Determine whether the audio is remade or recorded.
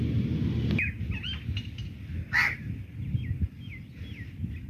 recorded